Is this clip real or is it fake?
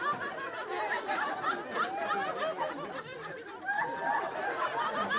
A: real